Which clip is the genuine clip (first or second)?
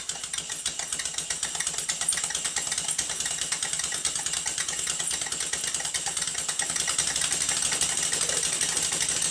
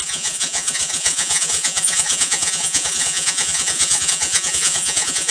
first